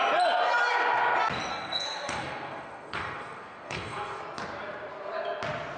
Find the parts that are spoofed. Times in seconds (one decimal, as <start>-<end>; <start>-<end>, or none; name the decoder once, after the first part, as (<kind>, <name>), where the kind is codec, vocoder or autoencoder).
1.5-4.2 (codec, SNAC)